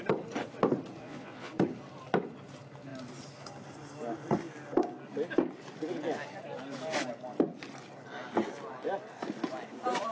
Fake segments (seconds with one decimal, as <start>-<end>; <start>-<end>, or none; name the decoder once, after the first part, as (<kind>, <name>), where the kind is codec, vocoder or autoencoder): 1.0-1.5 (vocoder, Vocos)